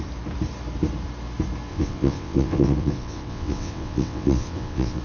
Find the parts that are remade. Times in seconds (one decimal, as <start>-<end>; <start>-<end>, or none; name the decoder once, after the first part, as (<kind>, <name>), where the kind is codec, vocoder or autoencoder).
1.7-5.0 (vocoder, WaveNeXt)

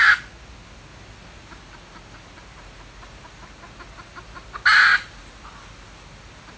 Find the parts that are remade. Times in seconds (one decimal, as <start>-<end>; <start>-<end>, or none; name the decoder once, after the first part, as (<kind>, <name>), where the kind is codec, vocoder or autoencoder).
none

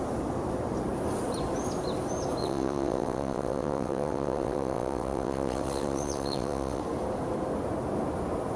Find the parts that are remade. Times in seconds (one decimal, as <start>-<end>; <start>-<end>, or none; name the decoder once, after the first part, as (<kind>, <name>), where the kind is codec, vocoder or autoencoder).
2.4-6.8 (vocoder, WaveNeXt)

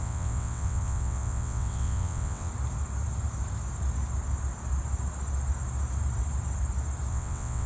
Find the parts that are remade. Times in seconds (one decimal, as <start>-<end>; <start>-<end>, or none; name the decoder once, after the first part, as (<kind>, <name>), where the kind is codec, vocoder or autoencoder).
0.0-2.5 (vocoder, WaveNeXt); 7.1-7.7

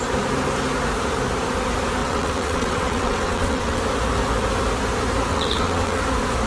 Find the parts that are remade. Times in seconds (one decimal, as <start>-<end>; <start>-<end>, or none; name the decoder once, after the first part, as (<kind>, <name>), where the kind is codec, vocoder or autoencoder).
2.0-3.8 (vocoder, WaveNeXt); 5.3-6.0

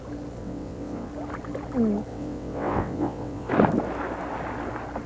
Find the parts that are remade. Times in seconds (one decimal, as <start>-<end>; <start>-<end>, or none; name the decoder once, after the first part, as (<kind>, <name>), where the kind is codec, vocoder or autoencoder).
0.4-1.1 (vocoder, WaveNeXt); 2.1-3.5